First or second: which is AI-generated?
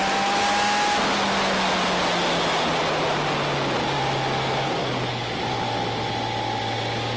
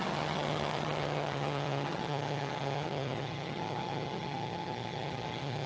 second